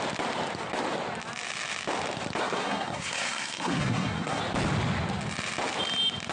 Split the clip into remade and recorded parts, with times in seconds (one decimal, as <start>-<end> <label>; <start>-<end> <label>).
0.0-2.4 recorded; 2.4-4.4 remade; 4.4-6.3 recorded